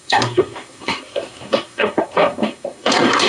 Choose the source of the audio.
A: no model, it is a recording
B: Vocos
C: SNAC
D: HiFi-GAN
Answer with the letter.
C